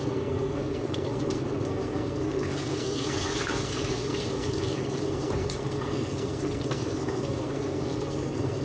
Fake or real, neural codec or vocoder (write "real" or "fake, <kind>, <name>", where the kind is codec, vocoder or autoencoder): fake, codec, SNAC